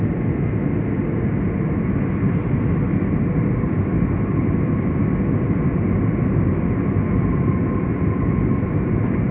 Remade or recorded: recorded